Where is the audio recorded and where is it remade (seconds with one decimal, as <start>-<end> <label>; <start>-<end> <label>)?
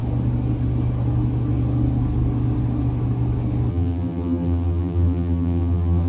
0.0-3.7 recorded; 3.7-6.1 remade